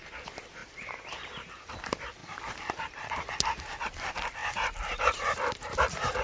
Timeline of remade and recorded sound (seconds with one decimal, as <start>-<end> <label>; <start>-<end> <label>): 0.0-0.6 recorded; 0.6-1.7 remade; 1.7-2.2 recorded; 2.2-3.3 remade; 3.3-4.4 recorded; 4.4-6.2 remade